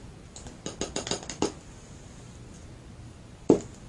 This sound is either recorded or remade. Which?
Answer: recorded